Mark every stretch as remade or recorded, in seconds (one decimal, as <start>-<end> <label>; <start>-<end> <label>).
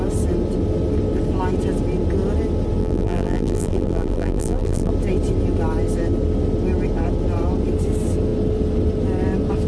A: 0.0-2.8 recorded; 2.8-4.9 remade; 4.9-9.7 recorded